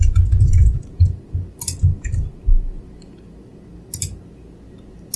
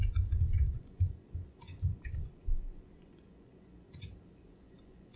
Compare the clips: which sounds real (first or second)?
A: first